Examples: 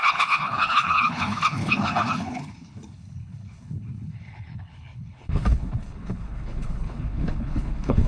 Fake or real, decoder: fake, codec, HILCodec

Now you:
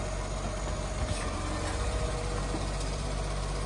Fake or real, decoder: fake, vocoder, BigVGAN v2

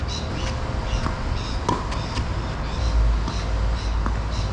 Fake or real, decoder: real